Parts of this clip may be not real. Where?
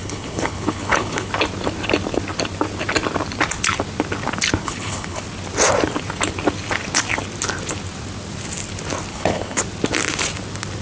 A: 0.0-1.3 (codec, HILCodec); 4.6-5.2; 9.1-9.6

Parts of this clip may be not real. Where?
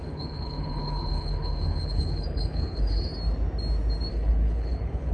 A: 0.0-3.1 (codec, HILCodec); 4.1-5.1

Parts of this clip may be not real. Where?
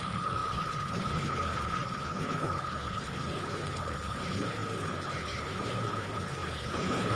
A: 0.0-7.2 (codec, HILCodec)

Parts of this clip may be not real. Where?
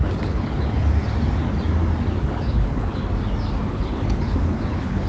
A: 0.0-0.8 (codec, HILCodec); 2.2-3.0; 3.7-5.1